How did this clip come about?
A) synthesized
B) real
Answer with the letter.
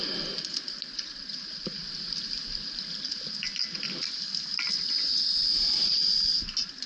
B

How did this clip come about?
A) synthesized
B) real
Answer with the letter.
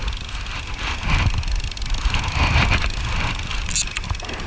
B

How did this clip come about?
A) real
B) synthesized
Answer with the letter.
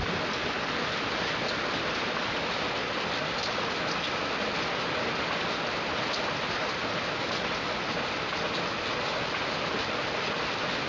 A